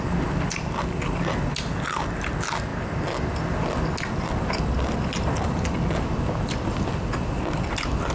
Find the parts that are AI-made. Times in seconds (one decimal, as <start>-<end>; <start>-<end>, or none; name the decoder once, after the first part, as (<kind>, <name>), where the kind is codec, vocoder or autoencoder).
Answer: none